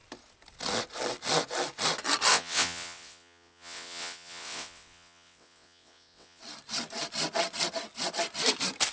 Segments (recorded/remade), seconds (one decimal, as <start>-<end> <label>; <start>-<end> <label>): 0.0-2.3 recorded; 2.3-6.4 remade; 6.4-8.9 recorded